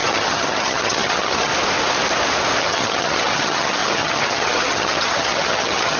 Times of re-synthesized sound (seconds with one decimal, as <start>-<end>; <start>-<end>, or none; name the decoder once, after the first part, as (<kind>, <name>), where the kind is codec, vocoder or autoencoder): 0.0-1.5 (vocoder, HiFi-GAN); 2.6-6.0